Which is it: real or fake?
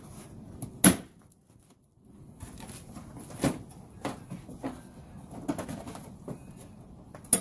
real